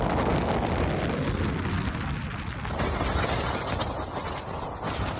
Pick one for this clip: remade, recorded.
recorded